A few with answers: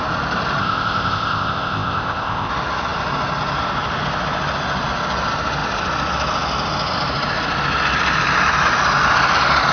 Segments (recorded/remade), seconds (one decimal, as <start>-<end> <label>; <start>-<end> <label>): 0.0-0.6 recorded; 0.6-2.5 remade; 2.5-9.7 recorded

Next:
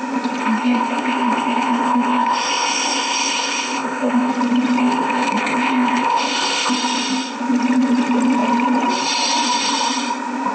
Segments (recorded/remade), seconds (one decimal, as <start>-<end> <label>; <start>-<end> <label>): 0.0-0.4 recorded; 0.4-4.3 remade; 4.3-4.8 recorded; 4.8-6.7 remade; 6.7-10.5 recorded

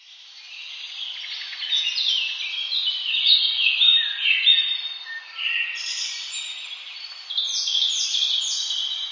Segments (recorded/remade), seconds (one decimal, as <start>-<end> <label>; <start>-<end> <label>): 0.0-9.1 recorded

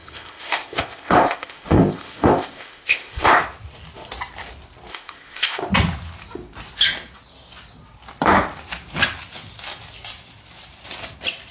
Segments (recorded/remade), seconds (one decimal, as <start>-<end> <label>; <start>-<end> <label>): 0.0-3.4 remade; 3.4-4.9 recorded; 4.9-5.6 remade; 5.6-11.5 recorded

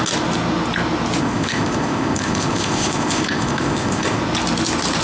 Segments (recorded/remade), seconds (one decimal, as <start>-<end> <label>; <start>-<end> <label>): 0.0-1.2 recorded; 1.2-4.2 remade; 4.2-5.0 recorded